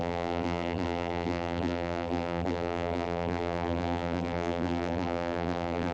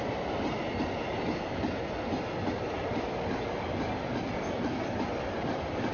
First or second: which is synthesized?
first